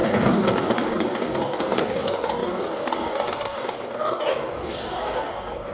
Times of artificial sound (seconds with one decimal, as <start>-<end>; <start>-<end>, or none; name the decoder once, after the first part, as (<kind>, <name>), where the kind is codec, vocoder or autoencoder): 0.0-5.7 (codec, DAC)